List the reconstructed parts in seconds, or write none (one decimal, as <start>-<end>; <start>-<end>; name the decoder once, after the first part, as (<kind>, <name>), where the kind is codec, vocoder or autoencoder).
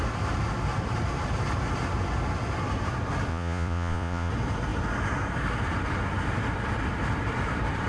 3.3-4.3 (vocoder, Vocos)